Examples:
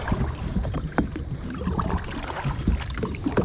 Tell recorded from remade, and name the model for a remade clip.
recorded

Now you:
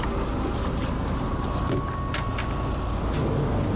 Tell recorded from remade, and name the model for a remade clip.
recorded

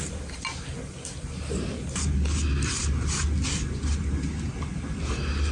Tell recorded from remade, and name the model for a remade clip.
recorded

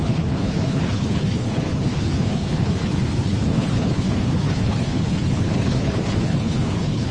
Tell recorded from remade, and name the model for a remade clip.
remade, codec, HILCodec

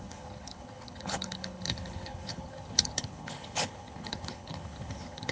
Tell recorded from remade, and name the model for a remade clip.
remade, codec, HILCodec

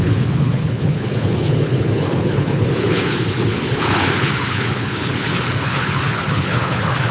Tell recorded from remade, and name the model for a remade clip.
remade, codec, HILCodec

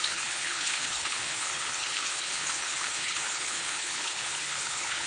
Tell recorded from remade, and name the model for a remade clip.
remade, codec, HILCodec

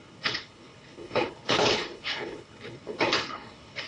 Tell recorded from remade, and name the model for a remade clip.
remade, codec, HILCodec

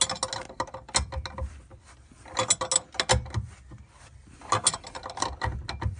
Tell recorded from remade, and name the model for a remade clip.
recorded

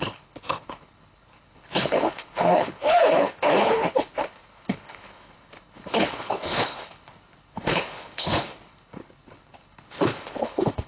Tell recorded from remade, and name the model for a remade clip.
remade, codec, HILCodec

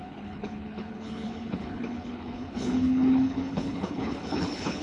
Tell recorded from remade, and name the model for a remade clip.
remade, codec, HILCodec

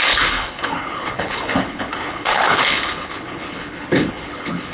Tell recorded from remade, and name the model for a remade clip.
remade, codec, HILCodec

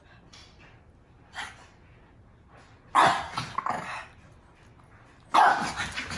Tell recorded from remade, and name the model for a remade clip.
recorded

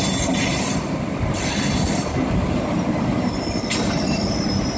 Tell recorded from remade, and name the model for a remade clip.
recorded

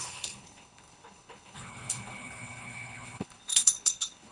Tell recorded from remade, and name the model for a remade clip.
remade, codec, HILCodec